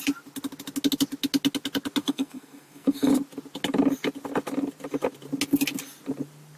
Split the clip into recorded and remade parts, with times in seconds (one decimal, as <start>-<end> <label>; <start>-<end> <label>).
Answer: 0.0-2.0 recorded; 2.0-3.1 remade; 3.1-6.6 recorded